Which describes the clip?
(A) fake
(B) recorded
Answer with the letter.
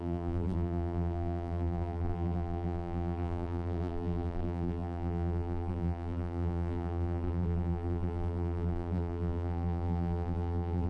A